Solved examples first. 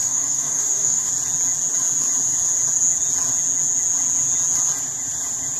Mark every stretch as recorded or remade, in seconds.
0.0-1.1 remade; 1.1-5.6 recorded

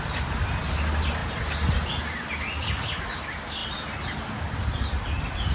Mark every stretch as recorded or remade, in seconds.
0.0-5.5 recorded

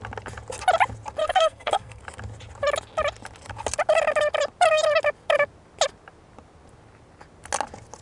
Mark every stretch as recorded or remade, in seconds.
0.0-1.2 recorded; 1.2-2.0 remade; 2.0-8.0 recorded

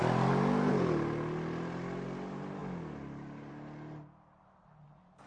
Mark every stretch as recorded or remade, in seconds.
0.0-5.3 recorded